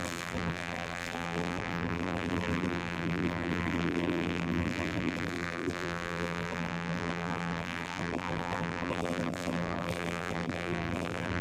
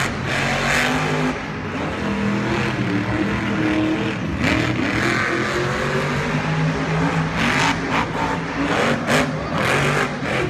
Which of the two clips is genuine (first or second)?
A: second